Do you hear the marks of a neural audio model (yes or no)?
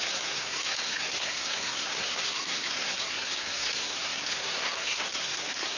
yes